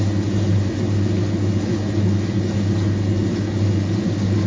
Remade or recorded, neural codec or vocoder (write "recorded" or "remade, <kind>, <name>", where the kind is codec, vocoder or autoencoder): recorded